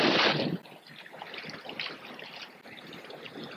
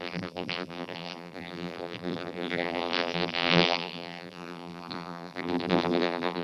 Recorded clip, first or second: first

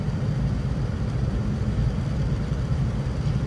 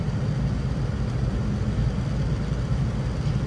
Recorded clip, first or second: second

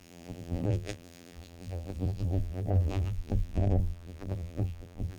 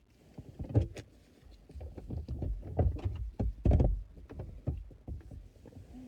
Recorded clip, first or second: second